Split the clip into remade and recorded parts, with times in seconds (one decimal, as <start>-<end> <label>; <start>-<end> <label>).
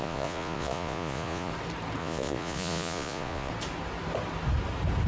0.0-1.5 remade; 1.5-2.0 recorded; 2.0-3.5 remade; 3.5-5.1 recorded